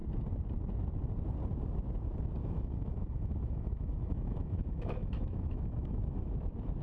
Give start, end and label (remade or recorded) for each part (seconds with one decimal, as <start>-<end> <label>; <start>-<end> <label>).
0.0-2.4 recorded; 2.4-6.3 remade; 6.3-6.8 recorded